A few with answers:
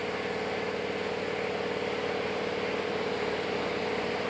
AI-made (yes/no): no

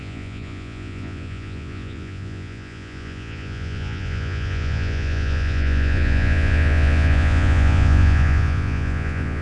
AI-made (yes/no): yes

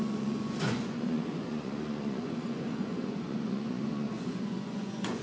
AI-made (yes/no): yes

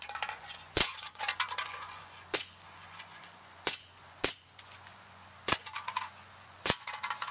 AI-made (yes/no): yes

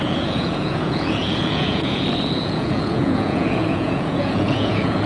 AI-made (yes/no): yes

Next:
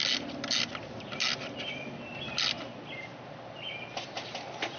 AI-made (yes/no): no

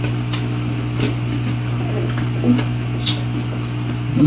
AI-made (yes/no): no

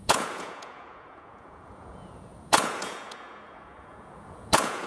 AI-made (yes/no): yes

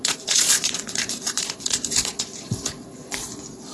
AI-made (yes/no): yes